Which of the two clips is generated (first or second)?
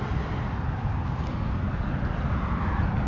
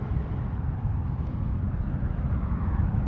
second